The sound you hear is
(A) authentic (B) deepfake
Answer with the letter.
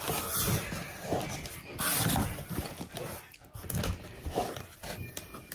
A